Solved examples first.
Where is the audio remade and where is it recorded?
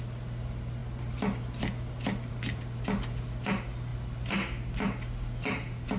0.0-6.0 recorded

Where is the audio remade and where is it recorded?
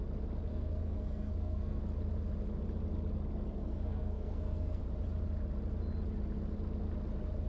0.0-0.5 recorded; 0.5-1.8 remade; 1.8-3.6 recorded; 3.6-4.8 remade; 4.8-7.5 recorded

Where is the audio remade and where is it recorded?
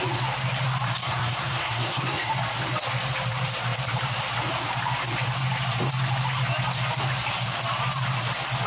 0.0-1.0 recorded; 1.0-2.3 remade; 2.3-8.7 recorded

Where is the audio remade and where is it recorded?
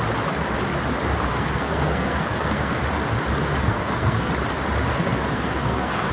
0.0-1.3 recorded; 1.3-2.8 remade; 2.8-3.6 recorded; 3.6-4.3 remade; 4.3-4.9 recorded; 4.9-6.1 remade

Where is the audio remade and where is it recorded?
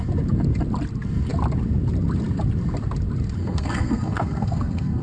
0.0-3.4 recorded; 3.4-5.0 remade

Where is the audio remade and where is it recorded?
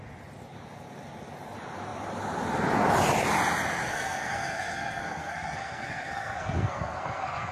0.0-3.9 recorded; 3.9-7.5 remade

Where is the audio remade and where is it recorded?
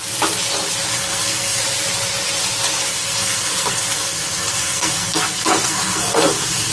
0.0-0.9 recorded; 0.9-1.6 remade; 1.6-2.9 recorded; 2.9-6.7 remade